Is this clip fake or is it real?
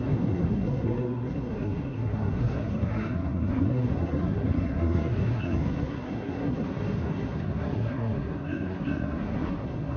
fake